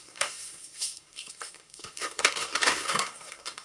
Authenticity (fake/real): fake